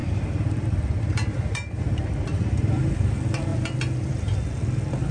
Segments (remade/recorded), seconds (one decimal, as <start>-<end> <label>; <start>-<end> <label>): 0.0-3.1 remade; 3.1-3.5 recorded; 3.5-4.4 remade; 4.4-5.1 recorded